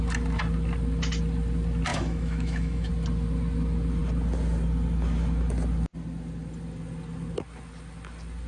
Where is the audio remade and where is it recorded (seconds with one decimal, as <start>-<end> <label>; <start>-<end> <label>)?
0.0-1.9 recorded; 1.9-2.9 remade; 2.9-8.5 recorded